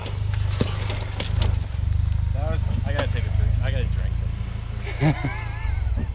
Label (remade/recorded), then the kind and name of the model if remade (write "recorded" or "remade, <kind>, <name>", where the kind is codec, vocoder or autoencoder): recorded